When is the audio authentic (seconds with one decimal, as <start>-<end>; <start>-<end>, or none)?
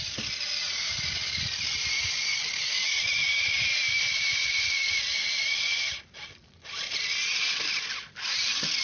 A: 0.0-4.4; 4.9-8.8